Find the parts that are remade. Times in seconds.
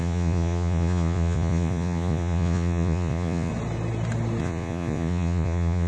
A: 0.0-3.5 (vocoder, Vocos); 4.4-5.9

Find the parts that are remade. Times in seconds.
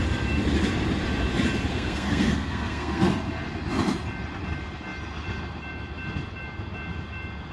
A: 1.7-3.1 (codec, SNAC)